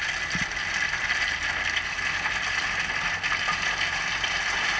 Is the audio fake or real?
real